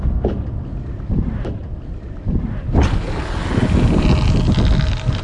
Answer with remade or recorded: recorded